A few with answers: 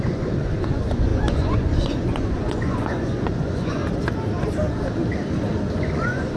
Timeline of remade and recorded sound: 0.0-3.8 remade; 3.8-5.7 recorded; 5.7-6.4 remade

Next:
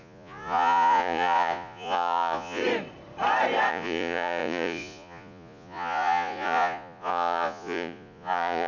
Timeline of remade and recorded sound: 0.0-2.6 remade; 2.6-3.7 recorded; 3.7-8.7 remade

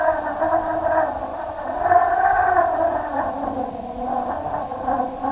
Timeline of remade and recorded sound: 0.0-5.3 recorded